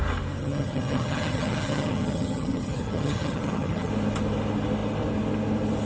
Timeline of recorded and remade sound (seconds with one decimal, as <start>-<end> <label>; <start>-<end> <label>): 0.0-0.4 recorded; 0.4-3.9 remade; 3.9-5.9 recorded

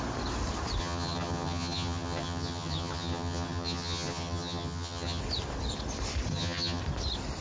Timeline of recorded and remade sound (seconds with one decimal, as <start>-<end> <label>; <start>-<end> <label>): 0.0-0.8 recorded; 0.8-5.2 remade; 5.2-6.3 recorded; 6.3-6.8 remade; 6.8-7.4 recorded

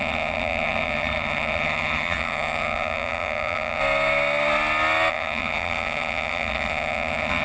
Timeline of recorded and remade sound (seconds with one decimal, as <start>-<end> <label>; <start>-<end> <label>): 0.0-3.8 remade; 3.8-5.1 recorded; 5.1-7.4 remade

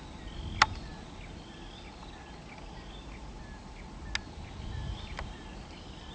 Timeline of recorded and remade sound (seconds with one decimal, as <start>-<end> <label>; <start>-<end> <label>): 0.0-6.1 recorded

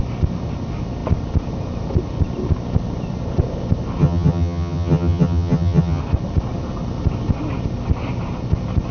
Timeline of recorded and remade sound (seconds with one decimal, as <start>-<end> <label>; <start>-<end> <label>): 0.0-4.0 recorded; 4.0-6.0 remade; 6.0-8.9 recorded

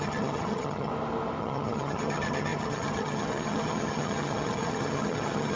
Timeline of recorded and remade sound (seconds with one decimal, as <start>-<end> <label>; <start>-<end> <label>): 0.0-0.9 remade; 0.9-1.4 recorded; 1.4-5.6 remade

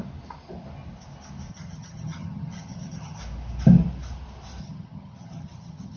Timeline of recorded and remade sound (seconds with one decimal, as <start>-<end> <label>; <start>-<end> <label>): 0.0-1.5 recorded; 1.5-3.2 remade; 3.2-4.6 recorded; 4.6-6.0 remade

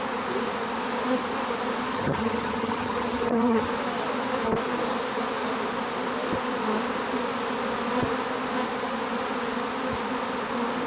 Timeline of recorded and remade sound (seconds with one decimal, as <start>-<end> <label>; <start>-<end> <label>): 0.0-1.9 recorded; 1.9-3.7 remade; 3.7-10.9 recorded